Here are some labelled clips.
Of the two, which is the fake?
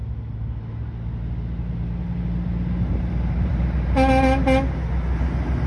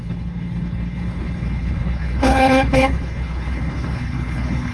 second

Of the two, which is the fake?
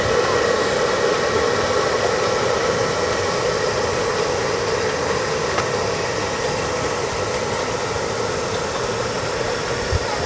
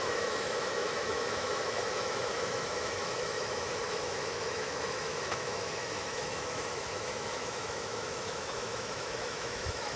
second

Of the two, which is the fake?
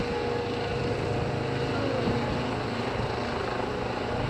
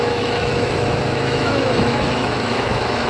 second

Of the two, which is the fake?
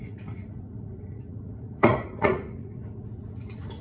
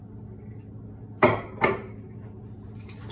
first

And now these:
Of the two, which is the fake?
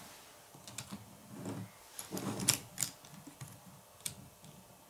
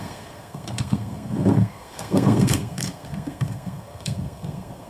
second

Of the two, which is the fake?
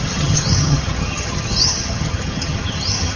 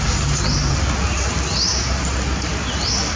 first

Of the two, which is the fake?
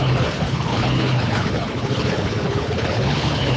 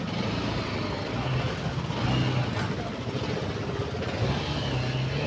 first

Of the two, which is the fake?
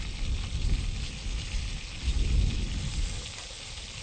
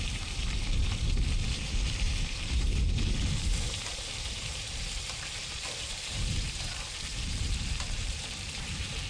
second